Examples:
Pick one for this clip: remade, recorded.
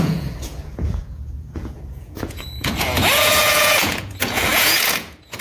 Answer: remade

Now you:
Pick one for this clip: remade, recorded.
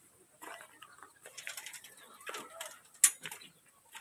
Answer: recorded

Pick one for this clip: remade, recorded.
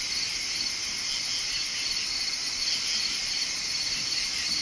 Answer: recorded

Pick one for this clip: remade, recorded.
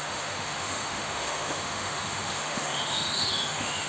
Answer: remade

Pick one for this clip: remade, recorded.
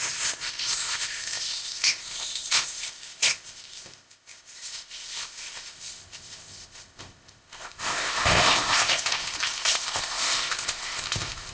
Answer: remade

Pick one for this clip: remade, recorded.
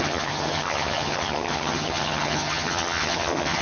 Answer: remade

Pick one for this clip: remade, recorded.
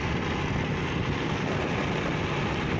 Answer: recorded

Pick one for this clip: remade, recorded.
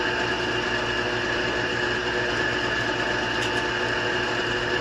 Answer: recorded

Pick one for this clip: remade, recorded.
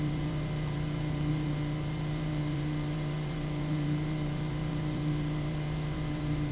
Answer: remade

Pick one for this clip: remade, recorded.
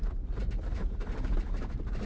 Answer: remade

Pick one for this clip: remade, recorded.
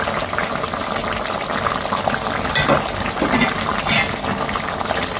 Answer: recorded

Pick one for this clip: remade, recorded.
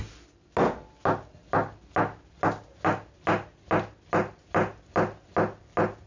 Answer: recorded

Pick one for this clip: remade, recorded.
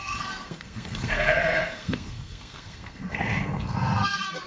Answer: remade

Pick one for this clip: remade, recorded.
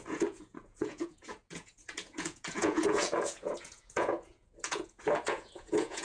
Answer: remade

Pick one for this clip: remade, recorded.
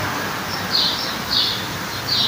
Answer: remade